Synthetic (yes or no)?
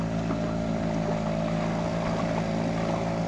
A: no